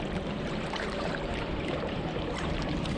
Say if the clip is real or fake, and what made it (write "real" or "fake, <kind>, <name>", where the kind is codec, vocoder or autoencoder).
fake, vocoder, BigVGAN v2